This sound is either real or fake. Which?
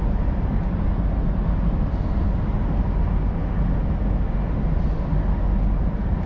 real